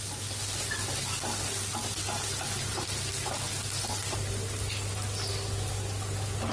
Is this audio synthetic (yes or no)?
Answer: no